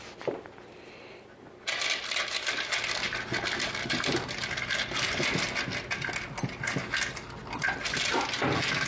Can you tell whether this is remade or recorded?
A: recorded